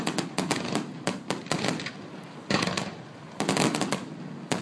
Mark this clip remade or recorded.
recorded